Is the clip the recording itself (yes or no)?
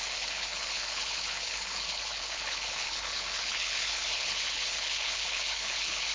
no